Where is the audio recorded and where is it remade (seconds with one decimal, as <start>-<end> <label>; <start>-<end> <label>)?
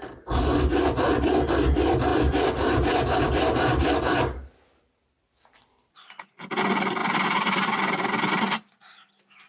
0.0-2.1 recorded; 2.1-5.9 remade; 5.9-9.5 recorded